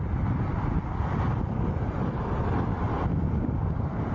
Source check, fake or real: real